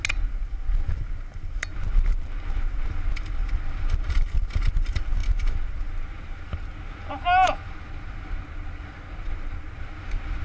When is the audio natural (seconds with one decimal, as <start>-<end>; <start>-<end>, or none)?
0.0-10.4